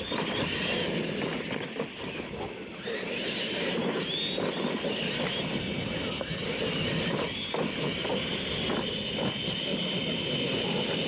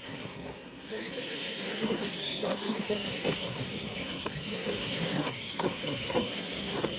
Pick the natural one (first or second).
first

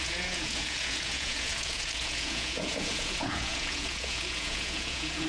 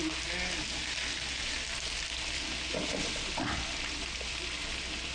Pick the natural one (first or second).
second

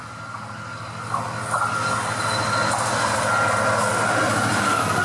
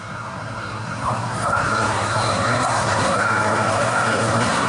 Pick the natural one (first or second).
first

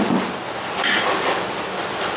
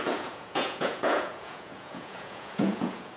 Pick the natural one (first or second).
first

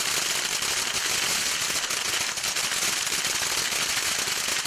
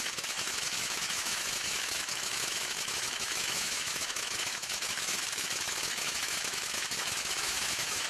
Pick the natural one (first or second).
first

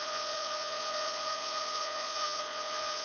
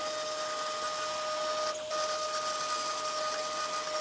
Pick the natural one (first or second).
second